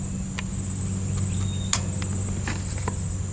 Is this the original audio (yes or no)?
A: yes